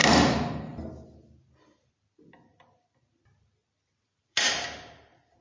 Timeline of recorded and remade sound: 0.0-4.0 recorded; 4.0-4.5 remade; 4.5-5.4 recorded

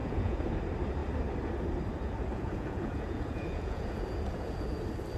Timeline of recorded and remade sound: 0.0-0.5 remade; 0.5-2.3 recorded; 2.3-4.8 remade; 4.8-5.2 recorded

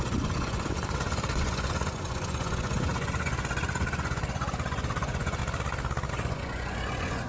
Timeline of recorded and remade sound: 0.0-5.4 remade; 5.4-6.1 recorded; 6.1-7.3 remade

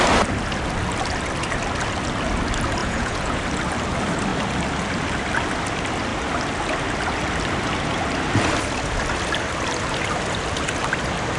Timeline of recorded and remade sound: 0.0-2.8 recorded; 2.8-3.4 remade; 3.4-11.4 recorded

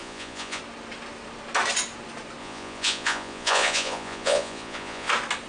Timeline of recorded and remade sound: 0.0-0.6 remade; 0.6-2.4 recorded; 2.4-5.1 remade; 5.1-5.5 recorded

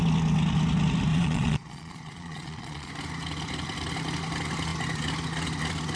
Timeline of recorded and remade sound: 0.0-1.1 recorded; 1.1-2.9 remade; 2.9-6.0 recorded

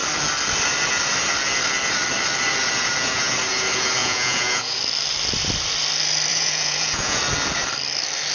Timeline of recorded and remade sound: 0.0-4.0 recorded; 4.0-4.8 remade; 4.8-6.3 recorded; 6.3-7.2 remade; 7.2-8.3 recorded

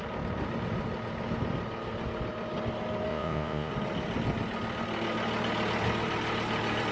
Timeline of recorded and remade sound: 0.0-3.1 recorded; 3.1-3.7 remade; 3.7-6.9 recorded